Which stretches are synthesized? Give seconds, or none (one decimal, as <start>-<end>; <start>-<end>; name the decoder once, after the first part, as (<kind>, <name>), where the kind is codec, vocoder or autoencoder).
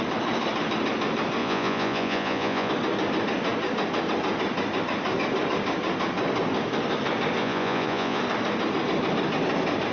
1.4-2.7 (vocoder, Vocos); 7.4-8.2